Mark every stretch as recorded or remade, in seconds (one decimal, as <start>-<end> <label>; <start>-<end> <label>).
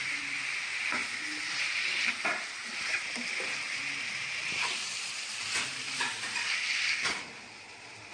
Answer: 0.0-8.1 recorded